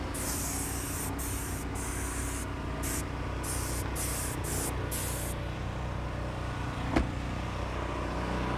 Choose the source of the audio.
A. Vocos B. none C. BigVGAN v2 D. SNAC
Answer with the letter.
B